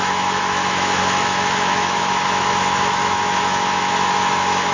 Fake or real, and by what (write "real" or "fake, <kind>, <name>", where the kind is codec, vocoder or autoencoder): fake, autoencoder, DAC-VAE